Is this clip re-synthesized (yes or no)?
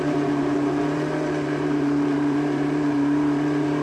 yes